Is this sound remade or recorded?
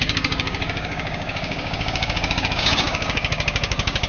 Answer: remade